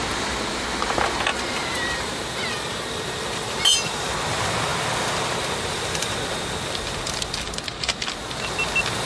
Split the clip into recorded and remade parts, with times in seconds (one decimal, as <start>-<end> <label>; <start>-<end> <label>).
0.0-1.3 recorded; 1.3-3.6 remade; 3.6-9.1 recorded